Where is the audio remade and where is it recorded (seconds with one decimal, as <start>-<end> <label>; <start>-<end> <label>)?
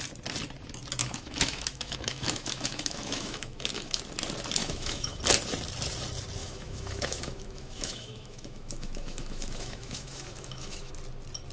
0.0-1.0 recorded; 1.0-4.0 remade; 4.0-4.6 recorded; 4.6-5.2 remade; 5.2-6.4 recorded; 6.4-10.9 remade; 10.9-11.5 recorded